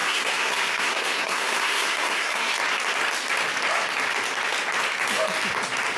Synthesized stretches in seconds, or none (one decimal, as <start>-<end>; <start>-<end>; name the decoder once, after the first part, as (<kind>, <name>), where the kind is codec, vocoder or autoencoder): 0.0-2.5 (codec, SNAC)